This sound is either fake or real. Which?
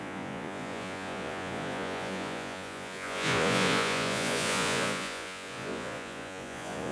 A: fake